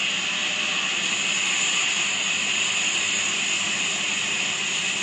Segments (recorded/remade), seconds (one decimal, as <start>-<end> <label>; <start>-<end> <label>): 0.0-5.0 recorded